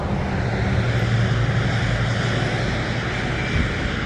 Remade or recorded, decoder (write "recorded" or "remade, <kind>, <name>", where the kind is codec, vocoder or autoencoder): recorded